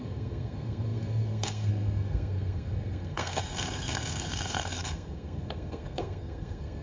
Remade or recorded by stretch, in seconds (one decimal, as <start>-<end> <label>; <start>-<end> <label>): 0.0-6.8 remade